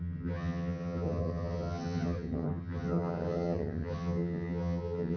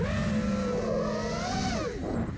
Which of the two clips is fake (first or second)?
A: first